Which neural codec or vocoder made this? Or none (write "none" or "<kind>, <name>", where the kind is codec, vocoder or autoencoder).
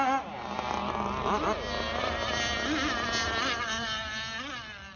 none